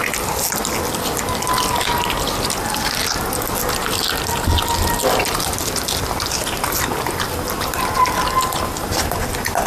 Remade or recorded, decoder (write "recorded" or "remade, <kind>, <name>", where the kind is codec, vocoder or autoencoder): recorded